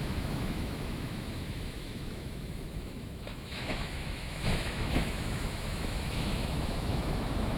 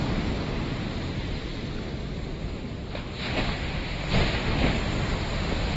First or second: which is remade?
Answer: first